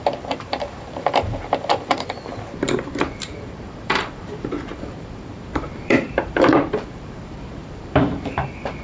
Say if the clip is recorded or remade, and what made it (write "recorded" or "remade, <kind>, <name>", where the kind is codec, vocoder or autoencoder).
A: remade, vocoder, BigVGAN v2